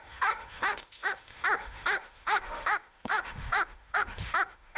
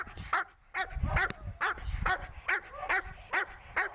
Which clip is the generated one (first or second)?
first